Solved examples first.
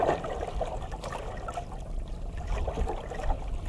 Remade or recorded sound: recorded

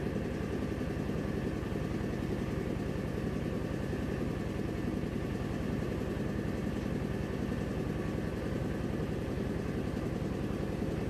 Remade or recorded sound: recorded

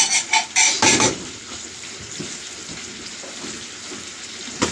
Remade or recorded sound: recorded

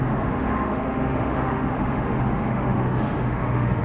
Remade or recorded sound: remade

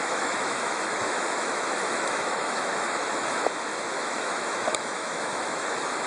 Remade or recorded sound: remade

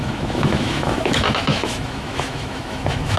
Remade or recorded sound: remade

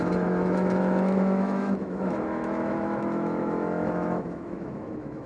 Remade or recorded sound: remade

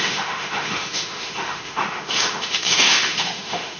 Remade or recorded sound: remade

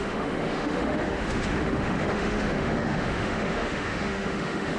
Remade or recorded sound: remade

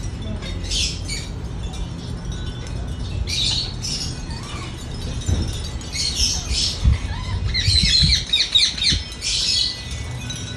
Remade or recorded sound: recorded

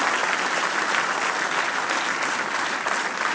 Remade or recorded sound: recorded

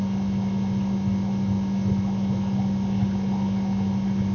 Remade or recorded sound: recorded